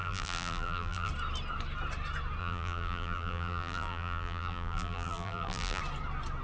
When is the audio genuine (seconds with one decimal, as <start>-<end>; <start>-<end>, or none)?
1.1-2.4; 5.8-6.4